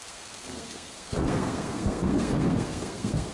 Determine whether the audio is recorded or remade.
remade